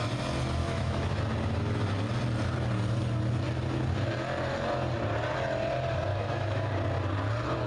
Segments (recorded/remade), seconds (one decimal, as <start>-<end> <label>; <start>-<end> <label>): 0.0-0.6 recorded; 0.6-1.2 remade; 1.2-6.1 recorded; 6.1-6.7 remade; 6.7-7.7 recorded

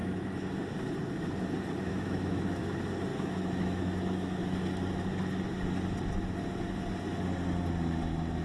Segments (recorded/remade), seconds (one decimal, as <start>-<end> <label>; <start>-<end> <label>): 0.0-0.6 remade; 0.6-1.9 recorded; 1.9-2.6 remade; 2.6-3.1 recorded; 3.1-4.4 remade; 4.4-8.4 recorded

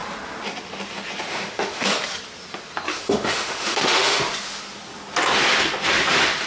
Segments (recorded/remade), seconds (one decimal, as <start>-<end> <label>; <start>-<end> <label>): 0.0-1.3 recorded; 1.3-1.9 remade; 1.9-2.9 recorded; 2.9-4.2 remade; 4.2-6.5 recorded